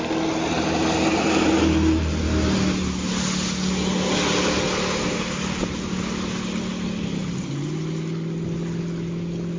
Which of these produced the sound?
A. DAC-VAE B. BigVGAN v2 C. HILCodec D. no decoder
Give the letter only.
D